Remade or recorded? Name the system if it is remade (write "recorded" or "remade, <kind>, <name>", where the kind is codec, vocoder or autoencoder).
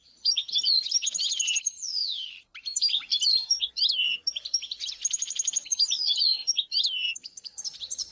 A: remade, vocoder, BigVGAN v2